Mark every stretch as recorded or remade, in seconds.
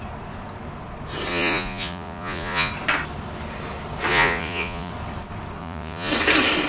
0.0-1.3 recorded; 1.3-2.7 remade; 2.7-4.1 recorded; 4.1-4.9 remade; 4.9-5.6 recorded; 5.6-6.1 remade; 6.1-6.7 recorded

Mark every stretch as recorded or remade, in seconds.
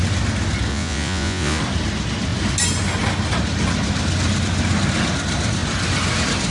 0.0-0.7 recorded; 0.7-1.6 remade; 1.6-6.5 recorded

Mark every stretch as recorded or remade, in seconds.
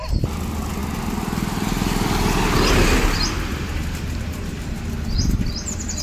0.0-6.0 recorded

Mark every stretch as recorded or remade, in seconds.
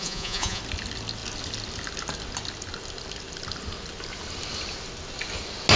0.0-0.6 remade; 0.6-5.8 recorded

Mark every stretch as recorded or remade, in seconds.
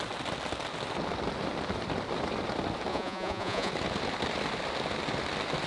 0.0-2.9 recorded; 2.9-3.7 remade; 3.7-5.7 recorded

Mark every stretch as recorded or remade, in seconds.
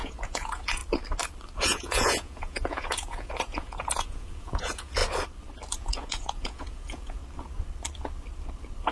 0.0-0.8 remade; 0.8-1.6 recorded; 1.6-5.0 remade; 5.0-5.7 recorded; 5.7-7.2 remade; 7.2-8.9 recorded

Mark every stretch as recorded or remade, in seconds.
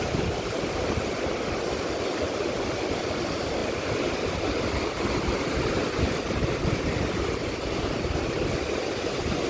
0.0-9.5 recorded